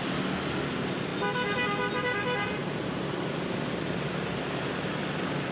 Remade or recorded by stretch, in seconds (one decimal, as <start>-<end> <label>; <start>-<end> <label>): 0.0-5.5 recorded